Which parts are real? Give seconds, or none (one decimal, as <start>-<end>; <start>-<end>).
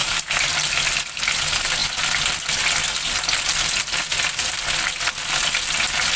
0.8-6.2